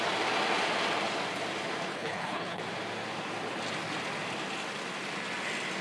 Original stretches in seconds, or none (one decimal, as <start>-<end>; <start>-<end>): 0.0-1.9; 2.6-5.8